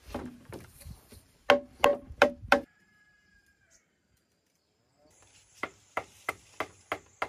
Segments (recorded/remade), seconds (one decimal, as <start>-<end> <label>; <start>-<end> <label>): 0.0-1.0 remade; 1.0-1.9 recorded; 1.9-6.3 remade; 6.3-7.3 recorded